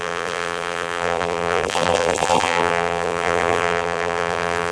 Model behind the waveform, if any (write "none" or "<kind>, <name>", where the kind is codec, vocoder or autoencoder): vocoder, BigVGAN v2